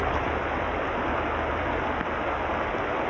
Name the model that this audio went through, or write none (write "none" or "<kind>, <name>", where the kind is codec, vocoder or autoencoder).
vocoder, BigVGAN v2